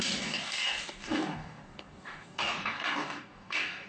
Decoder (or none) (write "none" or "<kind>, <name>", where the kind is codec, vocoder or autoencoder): codec, DAC